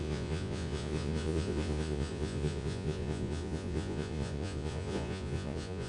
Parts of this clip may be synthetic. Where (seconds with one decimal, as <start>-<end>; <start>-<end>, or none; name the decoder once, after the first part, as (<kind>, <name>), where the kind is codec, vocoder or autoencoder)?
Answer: 0.0-5.9 (vocoder, Vocos)